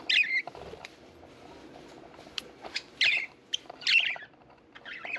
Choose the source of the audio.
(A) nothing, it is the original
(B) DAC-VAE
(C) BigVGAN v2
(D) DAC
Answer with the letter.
C